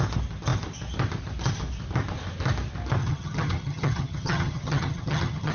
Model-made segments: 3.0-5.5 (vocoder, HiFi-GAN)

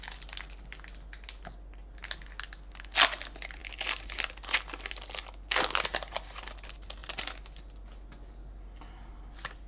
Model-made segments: none

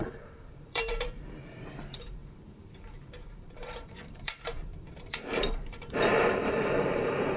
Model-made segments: 0.0-7.4 (vocoder, BigVGAN v2)

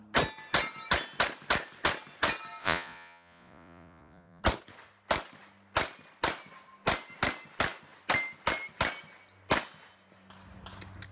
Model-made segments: 2.6-4.4 (vocoder, Vocos)

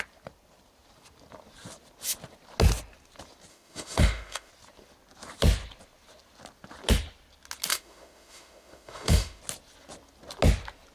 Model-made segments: 3.5-4.5 (autoencoder, DAC-VAE); 7.7-9.4

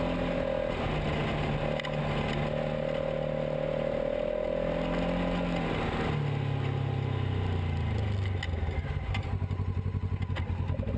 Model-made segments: none

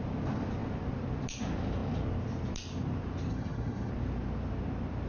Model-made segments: 3.3-3.9 (vocoder, HiFi-GAN)